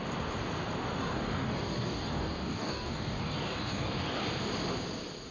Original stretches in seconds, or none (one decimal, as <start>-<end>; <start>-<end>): 0.0-1.0; 4.2-5.3